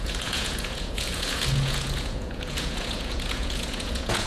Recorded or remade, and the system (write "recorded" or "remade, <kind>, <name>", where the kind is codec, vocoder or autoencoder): remade, vocoder, Vocos